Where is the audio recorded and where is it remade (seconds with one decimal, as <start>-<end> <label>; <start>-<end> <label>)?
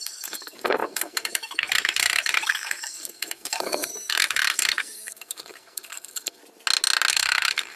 0.0-6.4 remade; 6.4-7.1 recorded; 7.1-7.8 remade